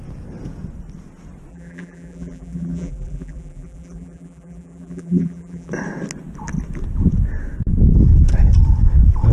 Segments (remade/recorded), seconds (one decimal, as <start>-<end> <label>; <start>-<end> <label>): 0.0-1.5 recorded; 1.5-5.7 remade; 5.7-9.3 recorded